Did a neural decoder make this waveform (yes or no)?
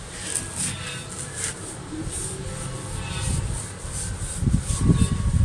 no